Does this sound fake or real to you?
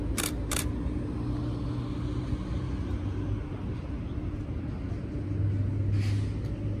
real